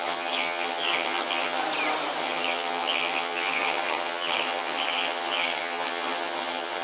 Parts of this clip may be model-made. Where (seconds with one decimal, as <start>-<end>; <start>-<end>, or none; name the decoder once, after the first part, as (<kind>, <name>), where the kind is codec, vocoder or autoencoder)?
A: 0.0-1.6 (vocoder, HiFi-GAN); 2.2-6.8